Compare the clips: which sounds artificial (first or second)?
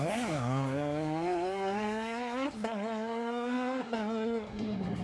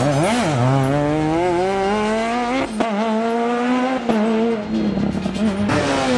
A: first